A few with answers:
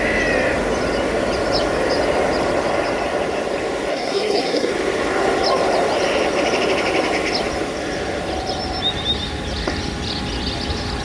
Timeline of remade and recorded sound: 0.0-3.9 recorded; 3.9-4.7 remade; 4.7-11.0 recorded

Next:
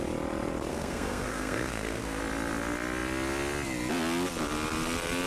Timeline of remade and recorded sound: 0.0-0.7 recorded; 0.7-2.2 remade; 2.2-5.3 recorded

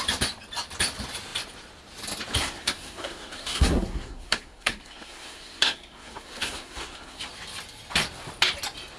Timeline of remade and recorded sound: 0.0-2.4 recorded; 2.4-7.3 remade; 7.3-9.0 recorded

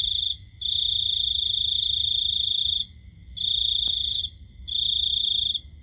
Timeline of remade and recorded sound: 0.0-5.8 recorded

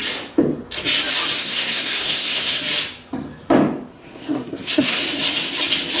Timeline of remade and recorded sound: 0.0-1.4 recorded; 1.4-2.6 remade; 2.6-3.9 recorded; 3.9-5.0 remade; 5.0-6.0 recorded

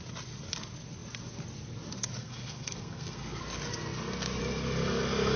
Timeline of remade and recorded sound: 0.0-2.2 recorded; 2.2-3.4 remade; 3.4-5.4 recorded